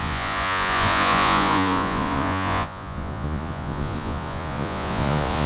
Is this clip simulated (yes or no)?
yes